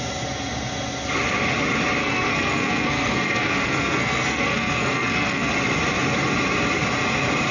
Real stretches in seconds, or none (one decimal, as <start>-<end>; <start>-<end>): 0.0-2.0; 5.5-7.5